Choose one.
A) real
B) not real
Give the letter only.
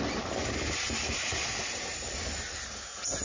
A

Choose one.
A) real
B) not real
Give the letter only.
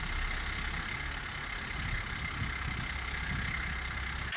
A